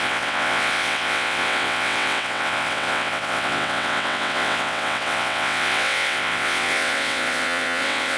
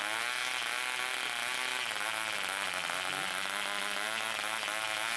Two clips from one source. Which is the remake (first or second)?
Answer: first